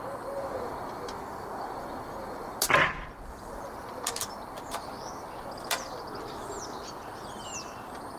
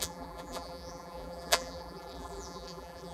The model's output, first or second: second